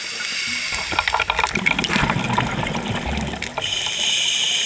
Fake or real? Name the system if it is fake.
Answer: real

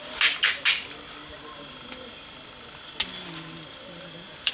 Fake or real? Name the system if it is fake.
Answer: real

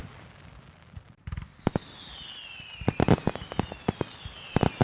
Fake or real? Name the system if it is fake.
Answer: real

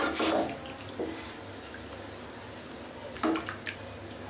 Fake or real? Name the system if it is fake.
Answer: real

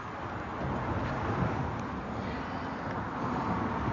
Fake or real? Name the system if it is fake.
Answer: real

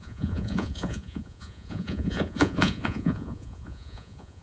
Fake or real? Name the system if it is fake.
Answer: fake, vocoder, Vocos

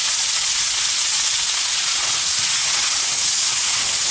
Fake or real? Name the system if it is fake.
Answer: fake, vocoder, Vocos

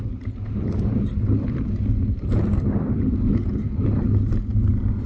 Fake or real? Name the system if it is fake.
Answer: real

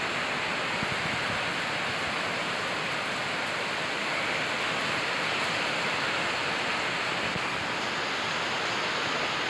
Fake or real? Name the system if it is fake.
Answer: real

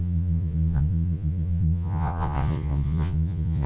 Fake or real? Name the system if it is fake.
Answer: fake, vocoder, Vocos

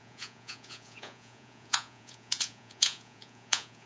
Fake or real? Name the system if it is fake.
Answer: fake, vocoder, Vocos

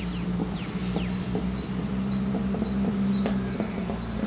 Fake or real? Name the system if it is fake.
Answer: real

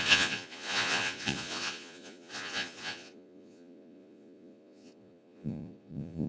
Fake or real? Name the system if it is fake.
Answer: fake, vocoder, Vocos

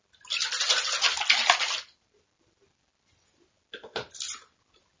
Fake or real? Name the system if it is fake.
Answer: real